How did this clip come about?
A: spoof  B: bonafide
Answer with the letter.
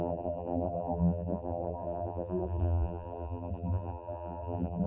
A